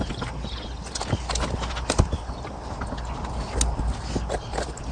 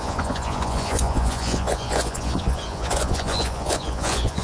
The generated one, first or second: second